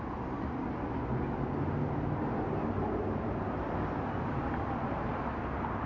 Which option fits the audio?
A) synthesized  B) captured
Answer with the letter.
B